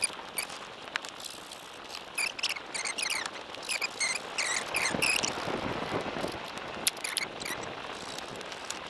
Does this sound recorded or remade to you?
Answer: recorded